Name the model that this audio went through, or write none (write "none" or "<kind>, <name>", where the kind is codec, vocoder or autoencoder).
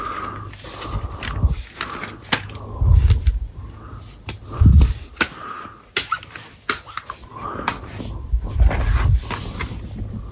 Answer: none